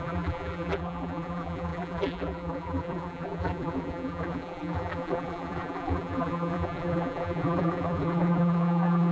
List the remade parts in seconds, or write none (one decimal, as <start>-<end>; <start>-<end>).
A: 0.0-9.1